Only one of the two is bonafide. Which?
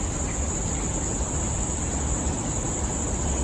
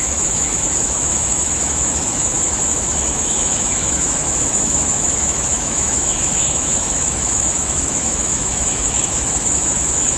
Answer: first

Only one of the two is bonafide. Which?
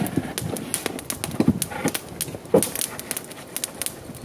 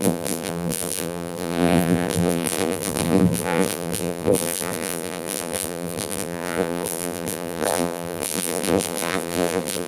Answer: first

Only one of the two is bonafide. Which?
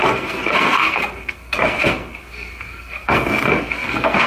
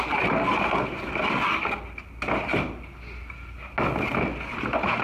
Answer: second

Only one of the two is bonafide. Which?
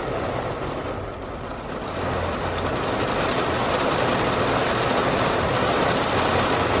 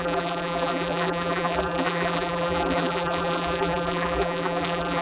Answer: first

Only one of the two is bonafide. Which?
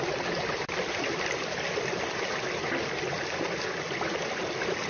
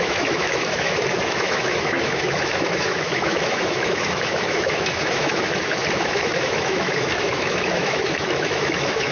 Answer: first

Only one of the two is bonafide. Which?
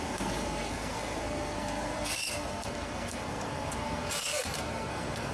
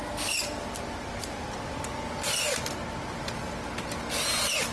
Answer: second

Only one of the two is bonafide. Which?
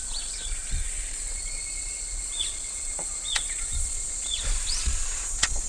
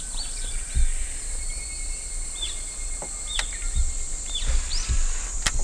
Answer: second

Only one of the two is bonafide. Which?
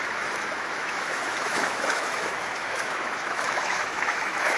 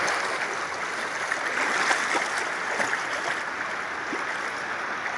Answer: second